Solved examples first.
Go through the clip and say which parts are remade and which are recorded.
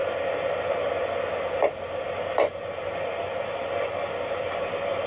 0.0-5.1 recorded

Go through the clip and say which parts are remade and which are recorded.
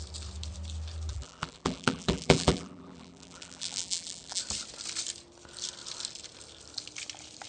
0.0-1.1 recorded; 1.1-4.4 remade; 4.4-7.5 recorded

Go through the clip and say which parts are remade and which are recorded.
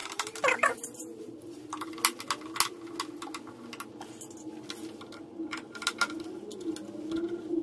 0.0-1.9 remade; 1.9-7.6 recorded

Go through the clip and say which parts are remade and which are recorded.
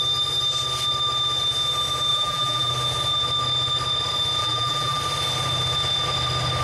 0.0-2.1 recorded; 2.1-2.7 remade; 2.7-4.4 recorded; 4.4-5.0 remade; 5.0-6.6 recorded